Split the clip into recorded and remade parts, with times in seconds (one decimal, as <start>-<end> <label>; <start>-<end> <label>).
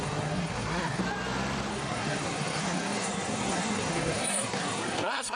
0.0-1.0 remade; 1.0-1.7 recorded; 1.7-5.4 remade